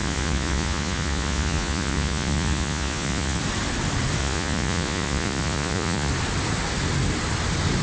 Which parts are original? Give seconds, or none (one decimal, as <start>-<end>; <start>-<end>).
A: 3.4-4.2; 6.1-7.8